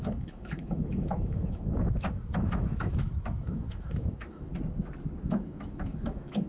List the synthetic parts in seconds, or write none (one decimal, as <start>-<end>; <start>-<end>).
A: 0.0-4.5; 5.3-6.5